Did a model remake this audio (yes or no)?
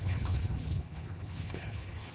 yes